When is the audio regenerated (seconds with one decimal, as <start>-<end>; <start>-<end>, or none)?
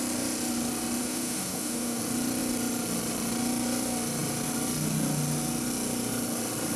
1.0-2.0